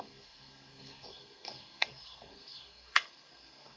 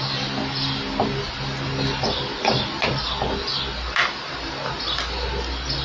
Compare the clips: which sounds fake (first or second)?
first